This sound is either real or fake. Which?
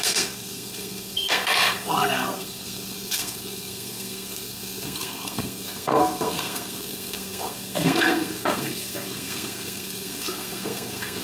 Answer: fake